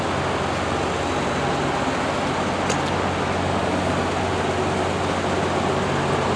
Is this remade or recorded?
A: recorded